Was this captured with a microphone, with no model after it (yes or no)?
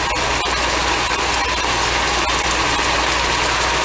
yes